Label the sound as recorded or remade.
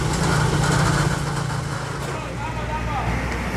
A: recorded